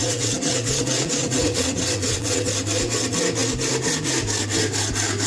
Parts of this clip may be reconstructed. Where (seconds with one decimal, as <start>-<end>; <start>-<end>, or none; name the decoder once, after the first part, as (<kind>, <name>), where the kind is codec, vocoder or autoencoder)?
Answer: 0.0-2.5 (vocoder, WaveNeXt)